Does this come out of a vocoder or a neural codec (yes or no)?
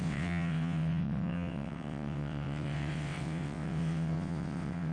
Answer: yes